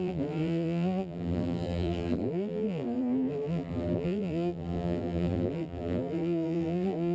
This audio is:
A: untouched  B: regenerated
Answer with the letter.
B